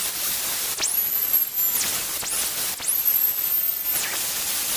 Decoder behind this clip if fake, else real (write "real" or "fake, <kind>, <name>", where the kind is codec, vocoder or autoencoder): real